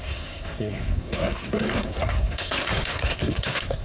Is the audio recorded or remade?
remade